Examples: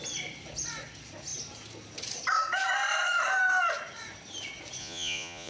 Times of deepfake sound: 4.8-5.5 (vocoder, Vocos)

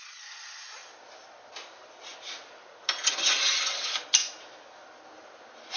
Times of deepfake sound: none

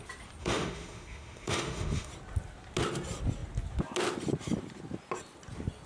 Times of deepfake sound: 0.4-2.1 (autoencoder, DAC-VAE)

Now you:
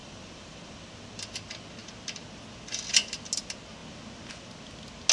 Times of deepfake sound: 0.0-0.7 (vocoder, BigVGAN v2)

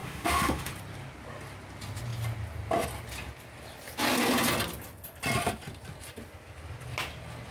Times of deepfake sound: 0.0-0.7 (autoencoder, DAC-VAE)

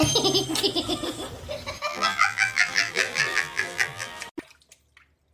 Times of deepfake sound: 1.9-4.2 (vocoder, BigVGAN v2)

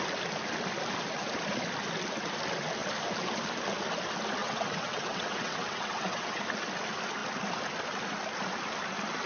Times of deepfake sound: 4.4-6.4 (vocoder, WaveNeXt)

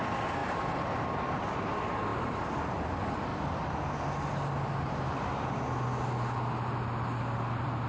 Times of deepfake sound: none